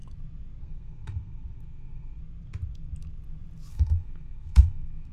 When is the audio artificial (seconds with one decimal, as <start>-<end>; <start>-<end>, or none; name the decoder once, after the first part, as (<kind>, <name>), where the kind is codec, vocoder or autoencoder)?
0.6-2.2 (codec, SNAC); 3.7-5.1